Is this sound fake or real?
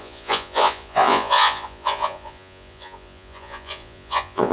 fake